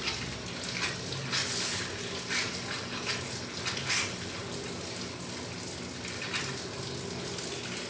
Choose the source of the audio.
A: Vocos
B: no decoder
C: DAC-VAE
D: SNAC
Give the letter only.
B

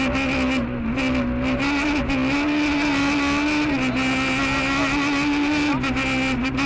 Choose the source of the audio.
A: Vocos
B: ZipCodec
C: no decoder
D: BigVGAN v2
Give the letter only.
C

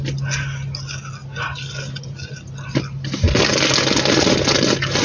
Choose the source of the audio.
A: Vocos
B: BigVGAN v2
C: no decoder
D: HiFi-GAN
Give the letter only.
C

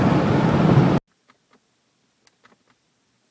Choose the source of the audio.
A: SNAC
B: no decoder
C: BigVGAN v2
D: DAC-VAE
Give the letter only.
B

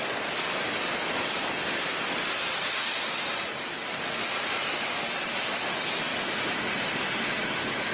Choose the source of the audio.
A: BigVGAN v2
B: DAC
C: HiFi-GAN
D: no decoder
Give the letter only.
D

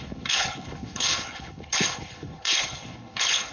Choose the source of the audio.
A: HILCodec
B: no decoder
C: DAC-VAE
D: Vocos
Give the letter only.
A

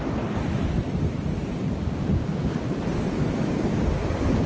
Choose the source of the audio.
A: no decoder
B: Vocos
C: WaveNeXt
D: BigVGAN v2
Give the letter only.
A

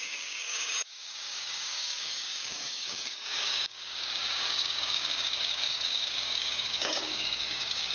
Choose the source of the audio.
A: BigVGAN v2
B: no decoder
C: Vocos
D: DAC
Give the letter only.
D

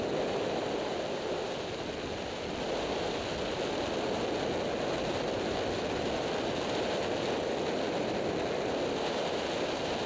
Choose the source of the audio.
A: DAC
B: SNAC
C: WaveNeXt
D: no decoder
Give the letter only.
D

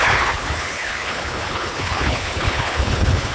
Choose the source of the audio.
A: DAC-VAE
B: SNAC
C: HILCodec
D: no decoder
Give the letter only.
C